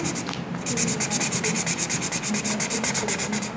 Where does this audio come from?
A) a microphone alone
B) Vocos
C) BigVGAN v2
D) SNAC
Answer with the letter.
A